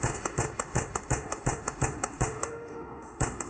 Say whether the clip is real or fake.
fake